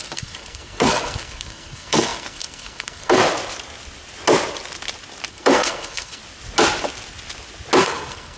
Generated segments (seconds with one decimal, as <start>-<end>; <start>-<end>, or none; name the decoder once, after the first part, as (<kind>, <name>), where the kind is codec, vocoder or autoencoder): 0.0-3.2 (codec, SNAC); 5.3-6.2; 7.8-8.4